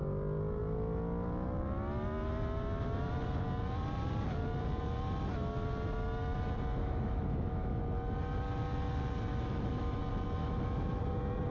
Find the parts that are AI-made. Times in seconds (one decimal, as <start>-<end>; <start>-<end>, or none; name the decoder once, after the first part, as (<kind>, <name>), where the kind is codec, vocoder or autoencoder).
6.8-7.8 (autoencoder, DAC-VAE); 9.3-10.0; 10.4-11.0